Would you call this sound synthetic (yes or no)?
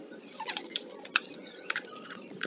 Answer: yes